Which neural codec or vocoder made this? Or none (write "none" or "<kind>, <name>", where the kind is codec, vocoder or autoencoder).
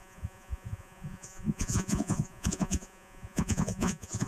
vocoder, Vocos